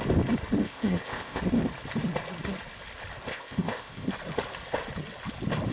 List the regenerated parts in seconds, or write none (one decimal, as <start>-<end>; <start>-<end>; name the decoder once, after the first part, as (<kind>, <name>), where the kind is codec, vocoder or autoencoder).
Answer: 0.6-1.4 (codec, ZipCodec); 3.3-4.1